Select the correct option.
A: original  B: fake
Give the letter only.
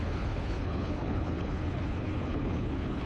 B